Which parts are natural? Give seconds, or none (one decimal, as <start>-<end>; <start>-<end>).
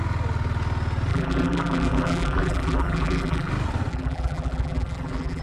0.0-1.1; 3.5-3.9